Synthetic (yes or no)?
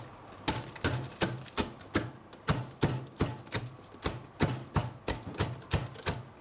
no